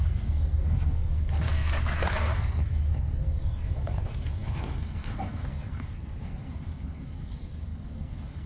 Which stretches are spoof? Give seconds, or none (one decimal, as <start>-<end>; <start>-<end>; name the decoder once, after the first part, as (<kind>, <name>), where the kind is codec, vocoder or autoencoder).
0.0-8.5 (codec, SNAC)